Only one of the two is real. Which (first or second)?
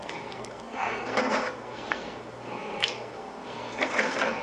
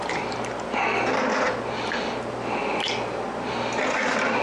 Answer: second